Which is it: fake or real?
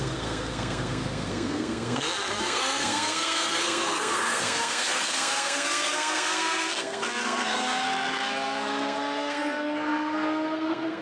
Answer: fake